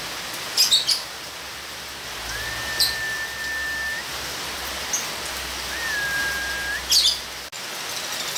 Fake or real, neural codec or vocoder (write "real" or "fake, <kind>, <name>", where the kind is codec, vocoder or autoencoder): real